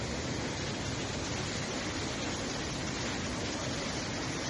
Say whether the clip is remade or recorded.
recorded